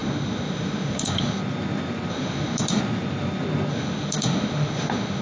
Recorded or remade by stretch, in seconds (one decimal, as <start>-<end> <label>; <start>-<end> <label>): 0.0-1.4 remade; 1.4-2.1 recorded; 2.1-2.8 remade; 2.8-3.7 recorded; 3.7-5.2 remade